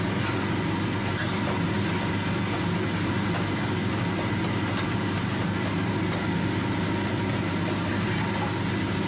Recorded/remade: recorded